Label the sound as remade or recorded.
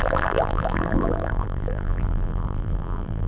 remade